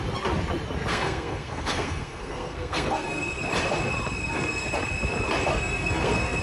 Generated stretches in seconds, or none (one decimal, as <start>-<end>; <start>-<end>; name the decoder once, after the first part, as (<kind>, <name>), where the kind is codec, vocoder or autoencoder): 0.9-3.4 (codec, SNAC); 4.2-4.7; 5.5-6.4